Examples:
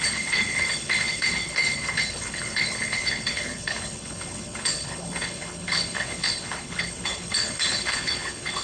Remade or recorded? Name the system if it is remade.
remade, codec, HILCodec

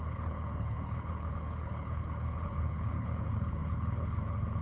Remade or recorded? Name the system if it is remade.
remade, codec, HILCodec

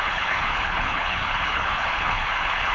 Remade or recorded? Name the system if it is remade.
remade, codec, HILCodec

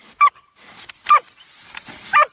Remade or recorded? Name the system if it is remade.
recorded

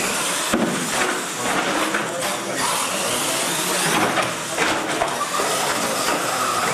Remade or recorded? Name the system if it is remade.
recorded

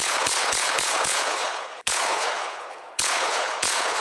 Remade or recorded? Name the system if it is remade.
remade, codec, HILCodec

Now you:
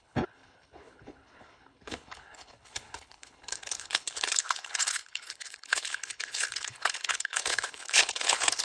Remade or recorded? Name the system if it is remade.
remade, codec, HILCodec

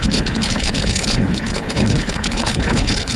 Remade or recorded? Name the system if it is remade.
remade, codec, HILCodec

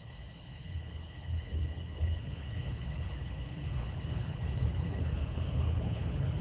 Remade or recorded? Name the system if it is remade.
remade, codec, HILCodec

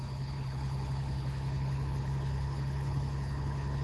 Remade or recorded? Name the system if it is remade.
remade, codec, HILCodec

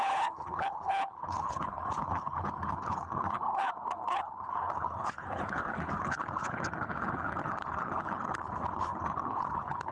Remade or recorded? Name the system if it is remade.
remade, codec, HILCodec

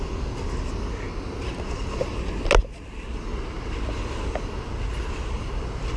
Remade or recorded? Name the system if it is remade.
recorded